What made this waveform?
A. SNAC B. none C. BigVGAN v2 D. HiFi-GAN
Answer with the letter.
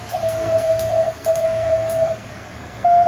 A